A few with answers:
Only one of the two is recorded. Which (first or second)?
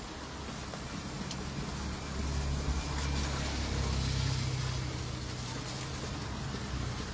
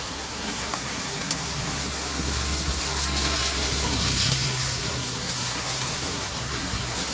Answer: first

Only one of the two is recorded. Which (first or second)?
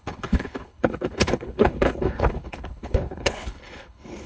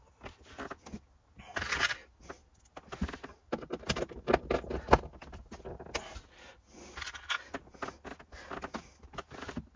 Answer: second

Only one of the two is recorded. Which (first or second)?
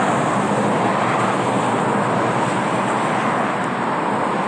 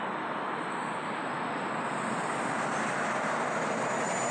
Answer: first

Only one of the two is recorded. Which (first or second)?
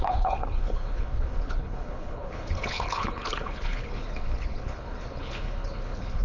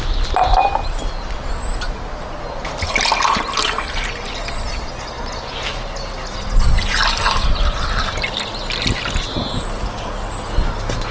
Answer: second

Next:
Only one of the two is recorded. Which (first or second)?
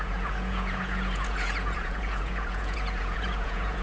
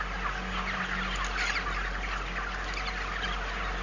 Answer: second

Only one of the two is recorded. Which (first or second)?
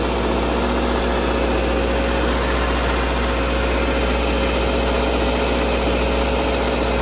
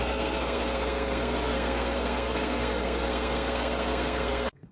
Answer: first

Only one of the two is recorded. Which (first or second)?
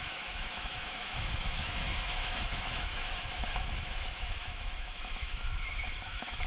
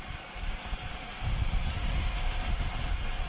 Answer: second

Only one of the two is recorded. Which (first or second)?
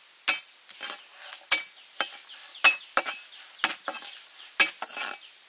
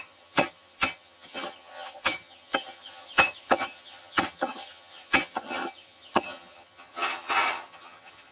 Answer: first